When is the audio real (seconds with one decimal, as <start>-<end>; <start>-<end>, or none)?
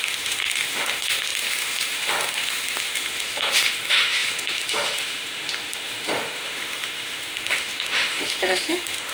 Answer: none